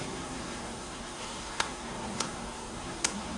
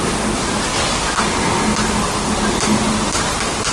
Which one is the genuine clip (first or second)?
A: second